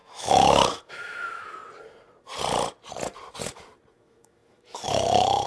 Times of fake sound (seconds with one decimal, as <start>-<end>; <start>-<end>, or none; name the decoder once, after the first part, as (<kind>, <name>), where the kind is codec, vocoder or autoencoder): 0.0-1.6 (autoencoder, DAC-VAE); 3.9-5.5